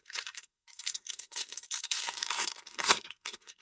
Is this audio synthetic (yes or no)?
yes